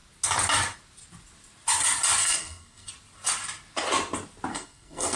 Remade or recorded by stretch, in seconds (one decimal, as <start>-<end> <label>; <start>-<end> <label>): 0.0-2.2 recorded; 2.2-2.9 remade; 2.9-4.5 recorded; 4.5-5.2 remade